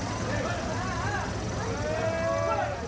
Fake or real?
real